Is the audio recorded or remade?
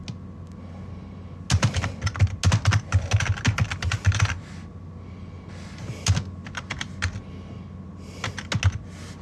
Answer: recorded